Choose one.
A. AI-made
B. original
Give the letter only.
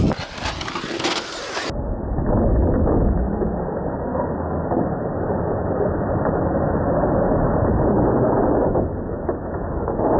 B